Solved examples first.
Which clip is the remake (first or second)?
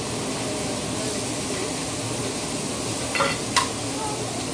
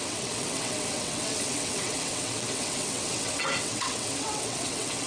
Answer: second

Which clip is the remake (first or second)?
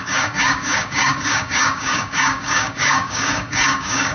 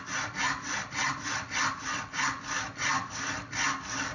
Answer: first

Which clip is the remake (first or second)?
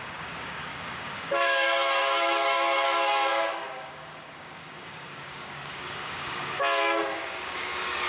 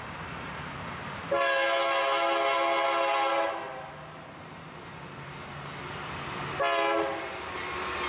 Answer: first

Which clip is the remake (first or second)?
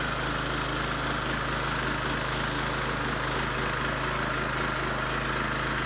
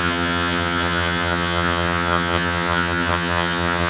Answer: second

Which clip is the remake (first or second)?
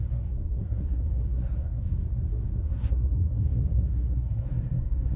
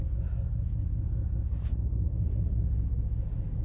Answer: first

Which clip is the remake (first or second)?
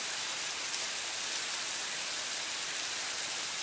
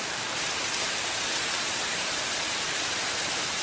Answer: second